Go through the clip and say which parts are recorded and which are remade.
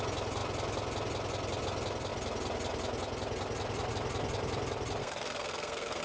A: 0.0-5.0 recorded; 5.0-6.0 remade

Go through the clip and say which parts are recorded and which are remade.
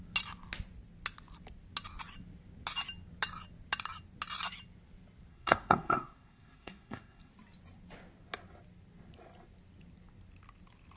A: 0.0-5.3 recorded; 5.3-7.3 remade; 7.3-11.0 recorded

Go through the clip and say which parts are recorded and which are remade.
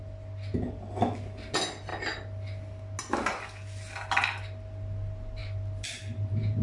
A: 0.0-6.6 recorded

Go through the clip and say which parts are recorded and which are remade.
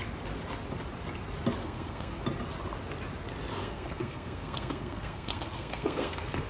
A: 0.0-1.6 recorded; 1.6-2.2 remade; 2.2-3.6 recorded; 3.6-6.5 remade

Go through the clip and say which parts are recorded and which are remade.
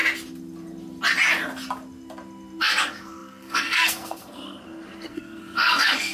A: 0.0-2.6 recorded; 2.6-6.1 remade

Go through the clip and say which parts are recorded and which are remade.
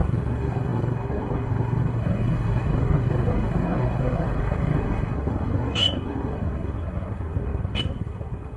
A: 0.0-8.6 remade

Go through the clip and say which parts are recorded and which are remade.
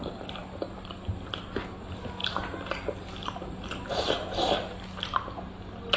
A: 0.0-6.0 recorded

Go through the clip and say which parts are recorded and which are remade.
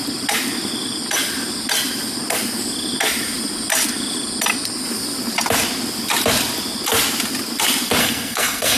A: 0.0-8.0 recorded; 8.0-8.8 remade